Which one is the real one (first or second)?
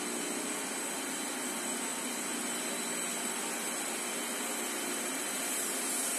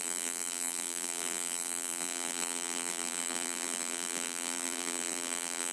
first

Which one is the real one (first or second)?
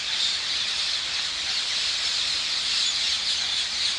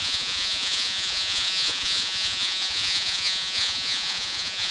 first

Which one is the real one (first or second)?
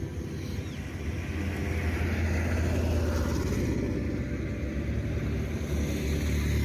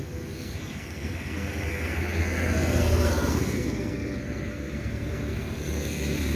first